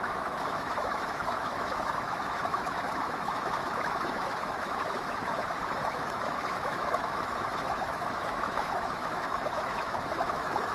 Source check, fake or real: fake